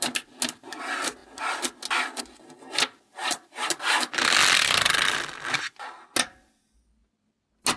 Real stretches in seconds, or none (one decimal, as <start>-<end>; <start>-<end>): 0.0-7.8